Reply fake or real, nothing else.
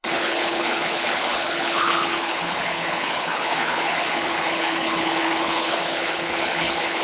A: fake